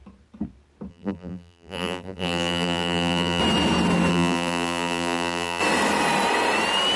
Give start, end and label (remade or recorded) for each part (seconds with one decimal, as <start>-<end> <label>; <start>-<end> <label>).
0.0-0.9 recorded; 0.9-3.4 remade; 3.4-4.1 recorded; 4.1-5.6 remade; 5.6-7.0 recorded